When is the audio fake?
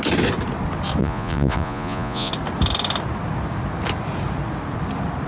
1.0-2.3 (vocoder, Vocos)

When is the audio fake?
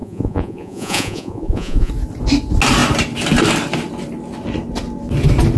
0.0-1.9 (vocoder, Vocos)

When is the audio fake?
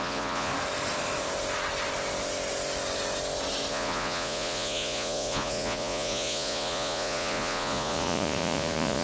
0.0-0.5 (vocoder, Vocos); 3.7-9.0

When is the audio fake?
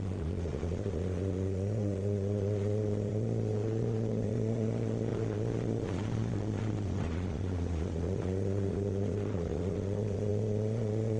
0.0-11.2 (vocoder, Vocos)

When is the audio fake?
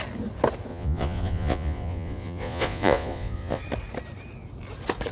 0.7-3.6 (vocoder, Vocos)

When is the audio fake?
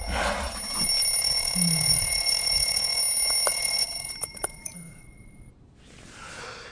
1.2-3.0 (vocoder, Vocos); 3.5-5.5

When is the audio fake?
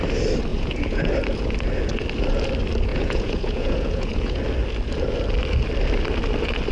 0.5-1.1 (vocoder, Vocos); 2.9-4.4